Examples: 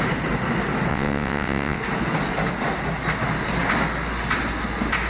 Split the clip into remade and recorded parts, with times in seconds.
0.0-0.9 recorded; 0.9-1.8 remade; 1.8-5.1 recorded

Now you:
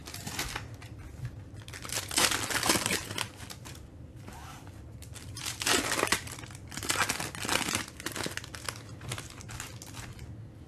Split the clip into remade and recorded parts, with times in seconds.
0.0-2.2 recorded; 2.2-6.8 remade; 6.8-10.7 recorded

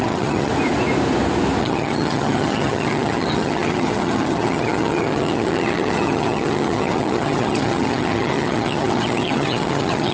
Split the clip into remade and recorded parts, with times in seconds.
0.0-0.5 remade; 0.5-1.6 recorded; 1.6-10.1 remade

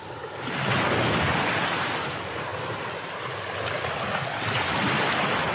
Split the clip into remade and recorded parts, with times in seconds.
0.0-5.5 recorded

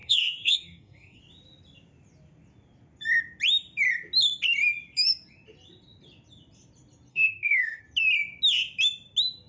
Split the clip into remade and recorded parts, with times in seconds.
0.0-1.2 remade; 1.2-7.1 recorded; 7.1-7.8 remade; 7.8-9.5 recorded